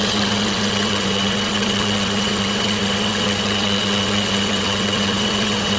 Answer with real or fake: fake